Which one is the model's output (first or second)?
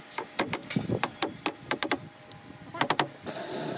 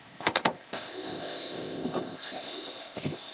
second